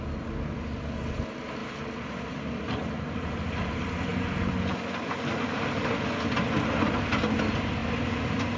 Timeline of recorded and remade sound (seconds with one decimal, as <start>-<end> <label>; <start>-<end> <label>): 0.0-8.6 recorded